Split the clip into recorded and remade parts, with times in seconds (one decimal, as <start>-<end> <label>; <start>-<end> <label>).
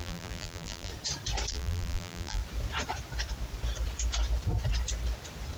0.0-0.9 remade; 0.9-1.5 recorded; 1.5-2.4 remade; 2.4-5.6 recorded